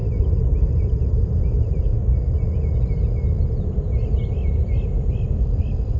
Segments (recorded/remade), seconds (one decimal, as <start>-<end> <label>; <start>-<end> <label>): 0.0-6.0 recorded